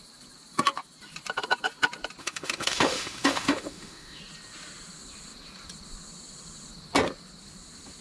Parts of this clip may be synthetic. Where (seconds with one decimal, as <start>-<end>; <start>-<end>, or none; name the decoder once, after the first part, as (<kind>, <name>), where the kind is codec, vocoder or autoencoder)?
2.2-4.2 (autoencoder, DAC-VAE)